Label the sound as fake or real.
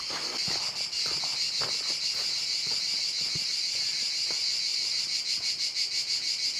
real